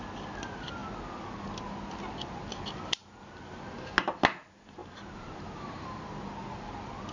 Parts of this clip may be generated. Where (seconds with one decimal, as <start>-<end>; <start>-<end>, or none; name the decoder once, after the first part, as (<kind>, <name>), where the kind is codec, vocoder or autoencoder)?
4.8-6.0 (vocoder, BigVGAN v2)

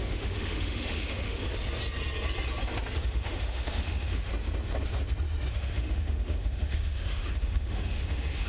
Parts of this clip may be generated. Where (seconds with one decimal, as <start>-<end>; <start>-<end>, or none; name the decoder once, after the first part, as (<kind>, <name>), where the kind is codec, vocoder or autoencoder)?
0.0-1.4 (autoencoder, DAC-VAE); 3.0-4.3; 5.5-8.5

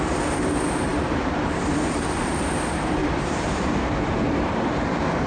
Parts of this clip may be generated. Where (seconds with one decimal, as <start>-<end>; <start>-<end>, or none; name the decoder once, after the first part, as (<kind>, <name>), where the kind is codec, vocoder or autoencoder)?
0.9-1.6 (vocoder, BigVGAN v2); 3.0-4.7

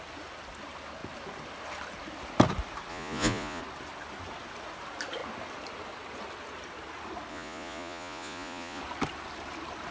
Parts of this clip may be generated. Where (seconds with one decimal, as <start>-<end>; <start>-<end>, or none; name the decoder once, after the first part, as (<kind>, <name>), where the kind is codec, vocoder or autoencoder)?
2.9-3.6 (vocoder, Vocos); 7.3-8.8

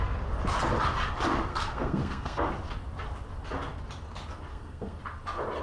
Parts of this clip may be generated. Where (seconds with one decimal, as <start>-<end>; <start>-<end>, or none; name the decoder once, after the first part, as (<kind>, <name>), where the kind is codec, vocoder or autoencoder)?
1.5-2.5 (codec, SNAC); 4.5-5.0

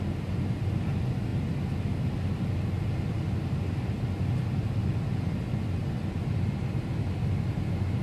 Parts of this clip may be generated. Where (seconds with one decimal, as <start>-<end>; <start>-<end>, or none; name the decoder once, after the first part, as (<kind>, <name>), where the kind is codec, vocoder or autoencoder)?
none